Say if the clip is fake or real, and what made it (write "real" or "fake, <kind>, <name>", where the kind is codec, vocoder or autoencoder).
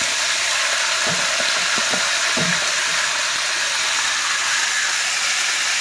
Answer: real